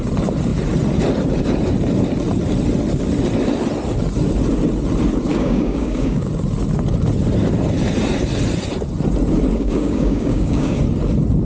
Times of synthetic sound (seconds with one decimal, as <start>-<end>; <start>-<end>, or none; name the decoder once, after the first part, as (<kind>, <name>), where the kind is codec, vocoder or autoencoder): 5.3-6.3 (codec, DAC); 9.5-10.8